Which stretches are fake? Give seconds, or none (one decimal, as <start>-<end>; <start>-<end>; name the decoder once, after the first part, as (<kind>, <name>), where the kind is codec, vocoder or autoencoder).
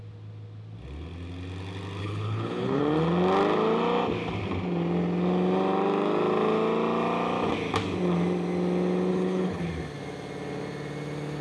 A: 2.0-2.8 (codec, HILCodec); 9.1-9.6